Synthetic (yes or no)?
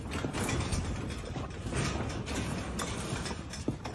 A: no